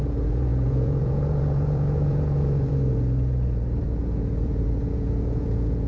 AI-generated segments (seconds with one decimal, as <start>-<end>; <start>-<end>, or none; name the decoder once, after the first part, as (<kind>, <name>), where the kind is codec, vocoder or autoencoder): 0.0-5.9 (vocoder, Vocos)